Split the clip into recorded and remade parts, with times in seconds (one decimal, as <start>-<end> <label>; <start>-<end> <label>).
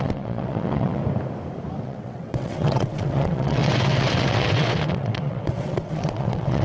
0.0-1.0 remade; 1.0-1.8 recorded; 1.8-6.6 remade